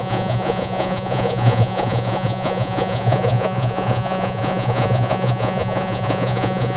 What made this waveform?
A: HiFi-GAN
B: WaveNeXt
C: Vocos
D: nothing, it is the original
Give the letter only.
C